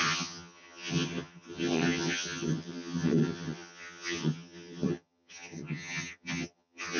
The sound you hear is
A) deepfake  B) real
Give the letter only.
A